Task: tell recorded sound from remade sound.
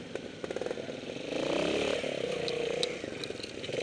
recorded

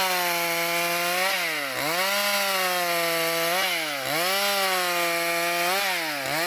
recorded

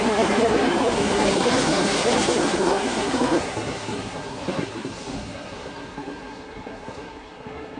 remade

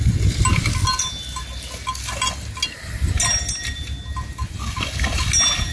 recorded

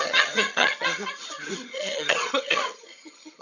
remade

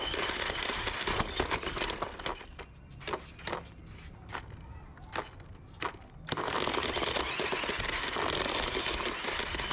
recorded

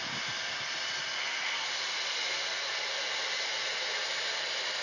recorded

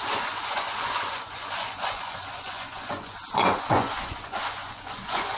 remade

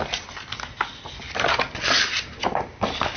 recorded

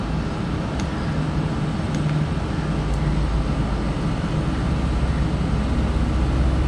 recorded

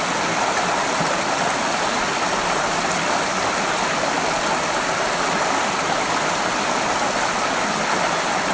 recorded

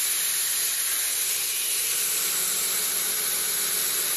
recorded